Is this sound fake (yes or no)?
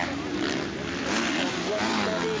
no